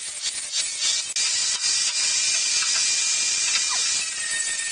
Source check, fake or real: real